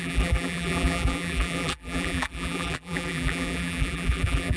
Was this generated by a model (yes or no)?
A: yes